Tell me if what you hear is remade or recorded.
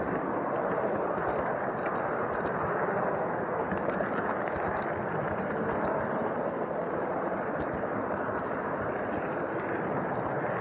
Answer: recorded